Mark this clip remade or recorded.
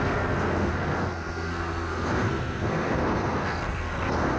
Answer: remade